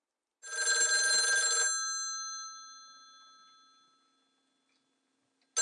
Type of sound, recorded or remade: recorded